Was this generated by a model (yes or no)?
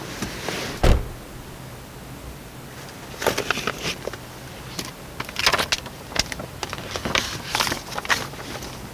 no